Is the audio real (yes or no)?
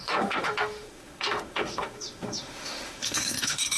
no